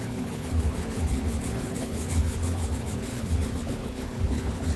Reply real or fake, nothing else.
fake